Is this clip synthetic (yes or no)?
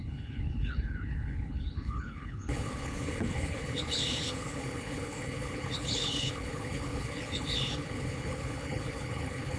yes